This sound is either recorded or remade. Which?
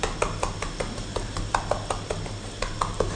recorded